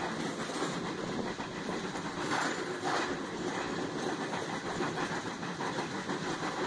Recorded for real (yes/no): no